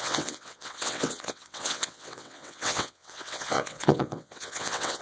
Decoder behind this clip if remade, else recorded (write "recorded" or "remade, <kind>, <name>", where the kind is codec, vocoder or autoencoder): remade, vocoder, WaveNeXt